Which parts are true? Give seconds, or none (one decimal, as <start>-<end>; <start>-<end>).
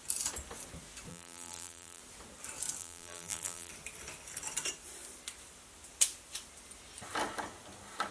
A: 0.0-1.1; 2.0-2.8; 3.7-8.1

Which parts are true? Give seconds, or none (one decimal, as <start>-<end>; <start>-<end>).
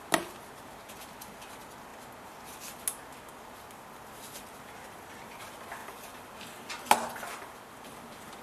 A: 0.0-5.8; 6.7-8.4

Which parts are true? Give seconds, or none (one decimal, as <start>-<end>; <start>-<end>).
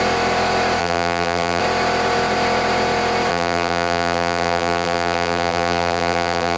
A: 0.0-0.8; 1.6-3.3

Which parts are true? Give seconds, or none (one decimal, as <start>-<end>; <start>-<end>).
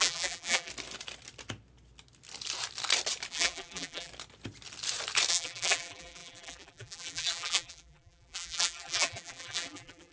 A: 0.7-3.3; 4.1-5.3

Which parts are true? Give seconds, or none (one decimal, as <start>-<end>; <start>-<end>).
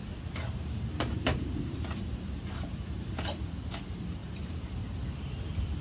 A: 3.4-4.2; 4.8-5.8